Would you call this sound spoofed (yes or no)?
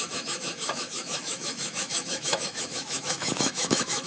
yes